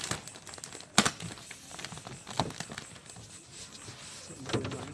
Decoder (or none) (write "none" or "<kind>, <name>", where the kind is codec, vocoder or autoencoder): none